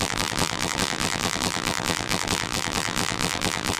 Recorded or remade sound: remade